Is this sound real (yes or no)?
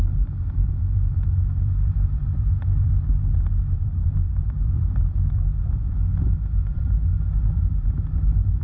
no